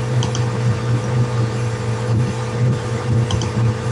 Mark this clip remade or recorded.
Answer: remade